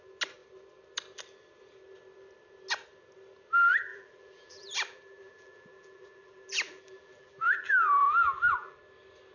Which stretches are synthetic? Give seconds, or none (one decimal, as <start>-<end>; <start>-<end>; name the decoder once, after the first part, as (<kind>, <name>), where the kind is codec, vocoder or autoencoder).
3.9-8.8 (vocoder, BigVGAN v2)

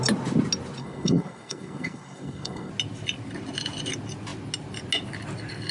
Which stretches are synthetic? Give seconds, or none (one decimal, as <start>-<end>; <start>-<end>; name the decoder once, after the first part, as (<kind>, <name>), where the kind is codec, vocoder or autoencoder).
0.8-2.7 (codec, SNAC)

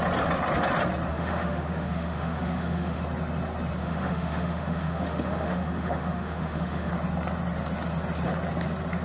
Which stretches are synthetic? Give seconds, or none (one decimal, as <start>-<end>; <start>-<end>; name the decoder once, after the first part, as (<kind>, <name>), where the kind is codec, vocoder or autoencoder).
1.1-3.0 (autoencoder, DAC-VAE); 3.8-6.9

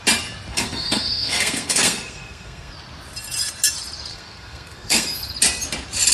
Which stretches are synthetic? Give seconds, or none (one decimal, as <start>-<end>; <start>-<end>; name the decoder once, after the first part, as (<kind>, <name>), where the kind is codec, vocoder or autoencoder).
0.5-2.7 (codec, SNAC); 4.1-5.2

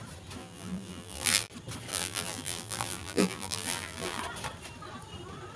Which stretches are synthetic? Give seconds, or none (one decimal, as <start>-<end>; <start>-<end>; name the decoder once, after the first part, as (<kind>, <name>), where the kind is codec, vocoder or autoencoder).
0.4-1.5 (vocoder, BigVGAN v2); 1.9-4.2

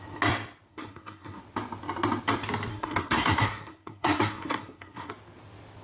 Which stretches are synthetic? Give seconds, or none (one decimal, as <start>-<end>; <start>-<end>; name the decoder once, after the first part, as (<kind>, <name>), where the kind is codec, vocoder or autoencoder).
0.7-1.4 (codec, SNAC); 2.7-5.1

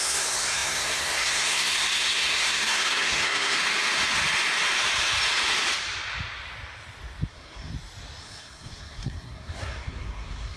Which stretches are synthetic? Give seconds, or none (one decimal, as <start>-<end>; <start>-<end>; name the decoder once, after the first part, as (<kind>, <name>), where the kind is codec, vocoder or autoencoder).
0.0-3.6 (codec, SNAC); 7.3-7.7; 8.2-10.6